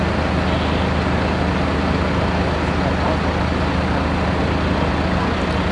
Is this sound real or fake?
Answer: real